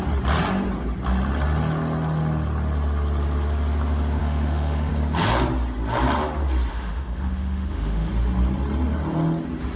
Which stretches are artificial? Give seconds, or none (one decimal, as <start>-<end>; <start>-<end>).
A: 4.2-4.9; 6.7-8.1